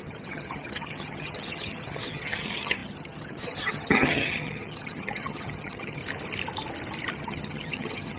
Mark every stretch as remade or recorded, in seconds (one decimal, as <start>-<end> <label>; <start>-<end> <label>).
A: 0.0-6.0 remade; 6.0-7.1 recorded; 7.1-8.2 remade